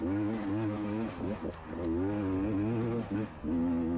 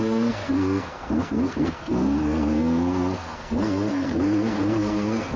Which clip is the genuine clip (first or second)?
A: first